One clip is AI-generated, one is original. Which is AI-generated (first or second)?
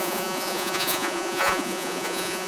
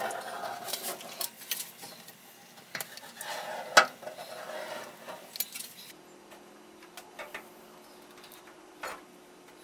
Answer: first